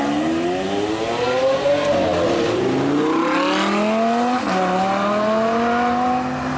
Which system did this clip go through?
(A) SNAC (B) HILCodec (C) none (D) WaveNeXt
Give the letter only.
C